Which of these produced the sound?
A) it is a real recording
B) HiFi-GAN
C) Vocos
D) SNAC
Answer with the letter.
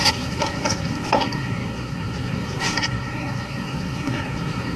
D